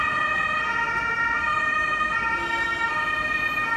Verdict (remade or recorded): recorded